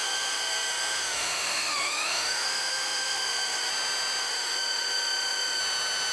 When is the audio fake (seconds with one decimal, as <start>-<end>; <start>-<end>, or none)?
0.0-3.7; 4.2-5.6

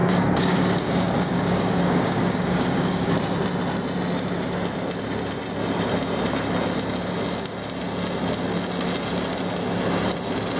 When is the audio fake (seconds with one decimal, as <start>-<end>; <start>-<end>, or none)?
0.0-3.1

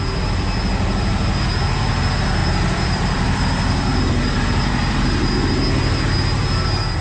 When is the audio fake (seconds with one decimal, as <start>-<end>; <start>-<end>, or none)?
2.4-5.3

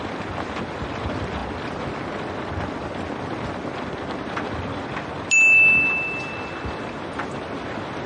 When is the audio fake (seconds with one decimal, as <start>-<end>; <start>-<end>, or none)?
none

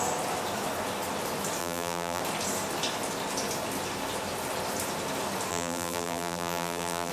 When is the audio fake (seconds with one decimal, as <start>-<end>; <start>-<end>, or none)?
1.6-2.2; 5.5-7.1

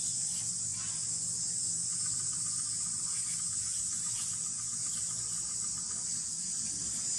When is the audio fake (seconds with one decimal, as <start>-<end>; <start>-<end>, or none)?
none

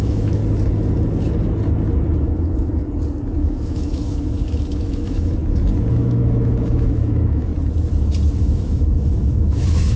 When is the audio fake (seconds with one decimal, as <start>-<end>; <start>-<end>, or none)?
0.0-0.4; 2.2-2.8; 3.3-5.4; 5.9-7.5; 8.4-10.0

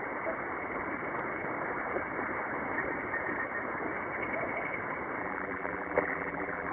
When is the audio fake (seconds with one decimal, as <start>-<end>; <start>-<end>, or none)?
5.2-6.7